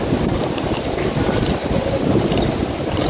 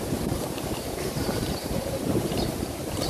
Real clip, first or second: first